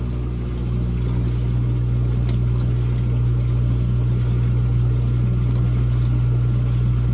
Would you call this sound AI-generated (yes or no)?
no